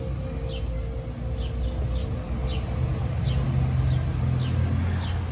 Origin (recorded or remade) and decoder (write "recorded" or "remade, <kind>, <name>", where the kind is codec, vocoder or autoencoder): recorded